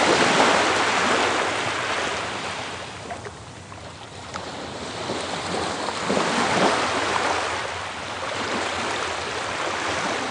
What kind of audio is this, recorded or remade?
recorded